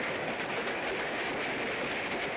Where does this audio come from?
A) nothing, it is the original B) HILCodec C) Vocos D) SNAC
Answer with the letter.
A